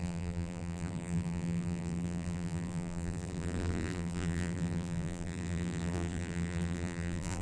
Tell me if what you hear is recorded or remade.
remade